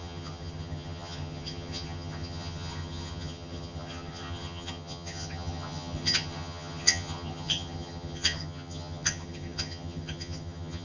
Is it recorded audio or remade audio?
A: remade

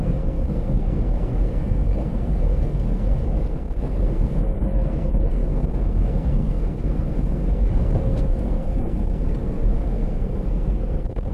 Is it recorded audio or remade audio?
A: remade